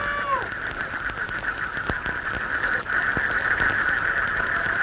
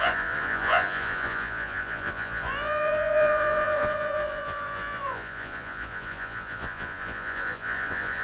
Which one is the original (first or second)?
first